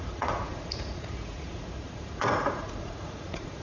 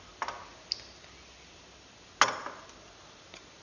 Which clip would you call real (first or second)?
second